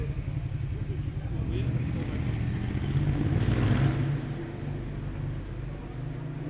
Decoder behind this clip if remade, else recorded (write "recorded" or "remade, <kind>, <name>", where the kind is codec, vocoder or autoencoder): recorded